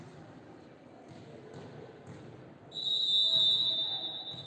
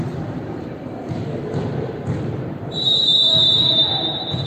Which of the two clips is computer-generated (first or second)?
second